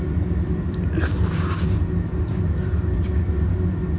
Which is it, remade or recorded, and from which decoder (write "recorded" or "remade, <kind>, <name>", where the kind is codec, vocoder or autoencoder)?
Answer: recorded